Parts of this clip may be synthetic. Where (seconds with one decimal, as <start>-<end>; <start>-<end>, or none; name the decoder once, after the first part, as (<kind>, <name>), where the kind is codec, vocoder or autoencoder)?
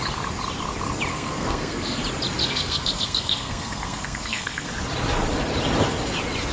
1.1-2.0 (codec, SNAC); 2.4-4.7